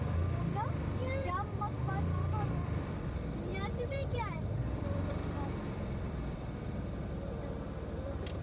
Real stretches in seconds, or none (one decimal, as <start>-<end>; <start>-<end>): 0.0-1.0; 2.9-3.5; 7.1-8.4